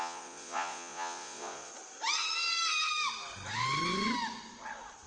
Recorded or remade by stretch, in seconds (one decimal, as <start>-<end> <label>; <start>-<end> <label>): 0.0-1.7 remade; 1.7-5.1 recorded